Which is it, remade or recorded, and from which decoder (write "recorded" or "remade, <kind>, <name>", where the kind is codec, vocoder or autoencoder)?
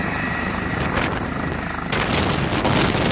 recorded